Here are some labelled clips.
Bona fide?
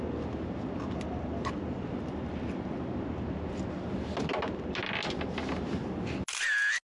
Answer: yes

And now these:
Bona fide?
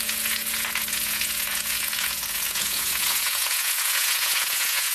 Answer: no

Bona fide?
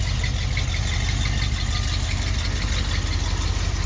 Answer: yes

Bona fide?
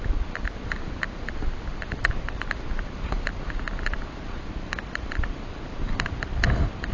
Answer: yes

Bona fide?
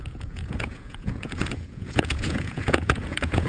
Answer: no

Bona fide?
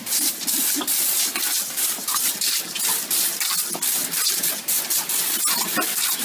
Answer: yes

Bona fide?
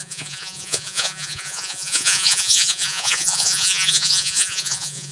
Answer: no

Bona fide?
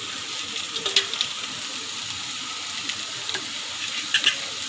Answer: yes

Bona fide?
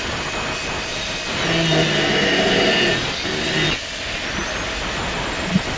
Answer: yes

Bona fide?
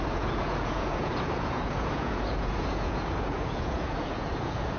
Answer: no